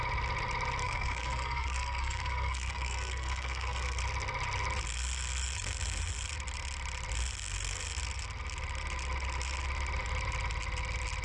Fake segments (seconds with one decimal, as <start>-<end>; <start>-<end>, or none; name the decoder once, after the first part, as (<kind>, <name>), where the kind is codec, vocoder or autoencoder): 0.8-4.0 (codec, SNAC)